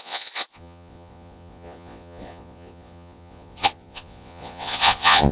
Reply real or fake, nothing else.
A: fake